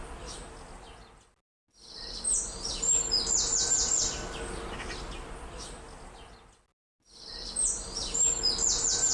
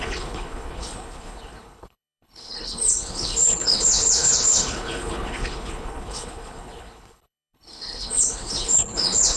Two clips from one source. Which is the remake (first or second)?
second